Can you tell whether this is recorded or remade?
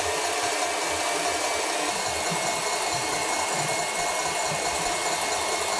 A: recorded